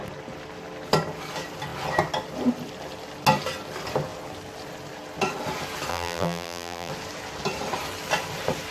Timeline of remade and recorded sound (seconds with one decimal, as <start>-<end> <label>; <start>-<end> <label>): 0.0-5.9 recorded; 5.9-6.9 remade; 6.9-8.7 recorded